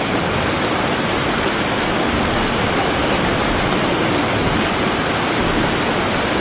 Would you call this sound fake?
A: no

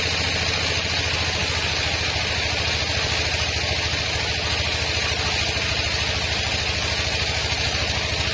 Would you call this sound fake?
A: no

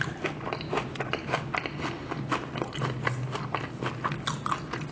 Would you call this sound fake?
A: no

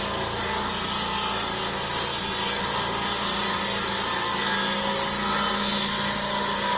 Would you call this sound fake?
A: no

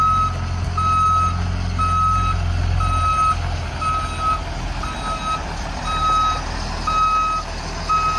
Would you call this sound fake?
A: no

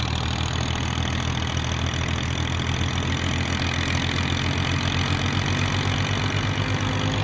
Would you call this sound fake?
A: no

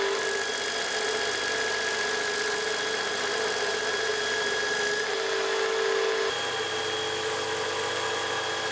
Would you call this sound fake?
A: no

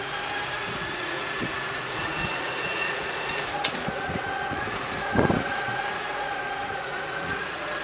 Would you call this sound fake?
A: yes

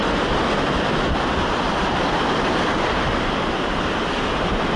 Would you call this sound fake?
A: no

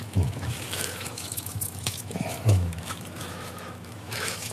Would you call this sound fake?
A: yes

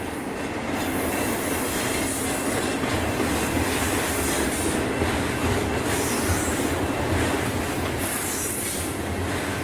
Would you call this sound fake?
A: no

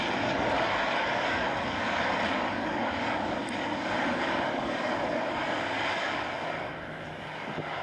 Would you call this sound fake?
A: yes